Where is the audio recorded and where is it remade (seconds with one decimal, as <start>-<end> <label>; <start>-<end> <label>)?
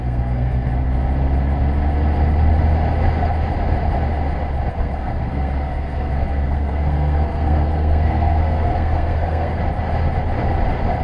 0.0-0.7 remade; 0.7-4.7 recorded; 4.7-9.6 remade; 9.6-11.0 recorded